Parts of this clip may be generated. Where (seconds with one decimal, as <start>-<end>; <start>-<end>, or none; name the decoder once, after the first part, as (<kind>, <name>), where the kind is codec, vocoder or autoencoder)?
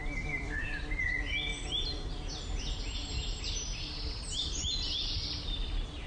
0.0-0.9 (vocoder, BigVGAN v2); 1.5-3.9